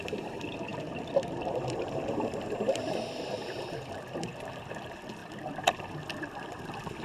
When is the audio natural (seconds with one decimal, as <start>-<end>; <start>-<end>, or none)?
5.2-6.2